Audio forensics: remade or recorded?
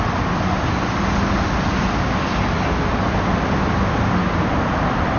recorded